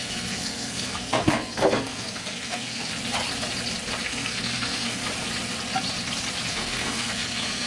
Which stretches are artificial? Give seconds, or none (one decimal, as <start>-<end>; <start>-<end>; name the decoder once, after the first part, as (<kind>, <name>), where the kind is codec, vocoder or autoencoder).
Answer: 0.0-2.9 (codec, SNAC); 4.0-5.0; 6.5-7.7